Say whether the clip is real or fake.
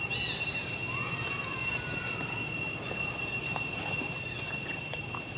real